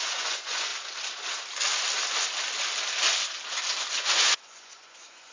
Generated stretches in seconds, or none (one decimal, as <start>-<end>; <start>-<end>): 0.0-0.7; 3.9-5.3